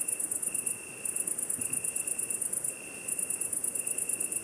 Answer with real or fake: real